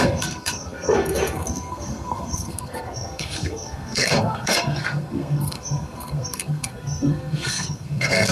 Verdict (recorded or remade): remade